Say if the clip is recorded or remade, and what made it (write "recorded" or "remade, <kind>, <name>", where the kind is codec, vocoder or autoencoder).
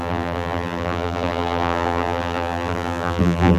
remade, vocoder, BigVGAN v2